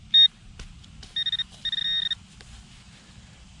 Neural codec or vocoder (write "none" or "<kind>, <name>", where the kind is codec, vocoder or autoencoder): none